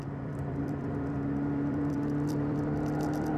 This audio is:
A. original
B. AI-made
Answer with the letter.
B